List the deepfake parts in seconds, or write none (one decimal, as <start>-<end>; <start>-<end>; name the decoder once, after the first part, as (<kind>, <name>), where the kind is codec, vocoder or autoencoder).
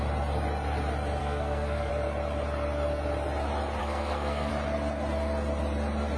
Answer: 1.2-1.9 (codec, SNAC); 3.8-4.5